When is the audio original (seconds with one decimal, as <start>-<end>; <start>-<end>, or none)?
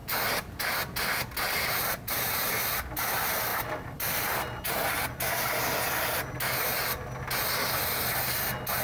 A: 0.0-8.8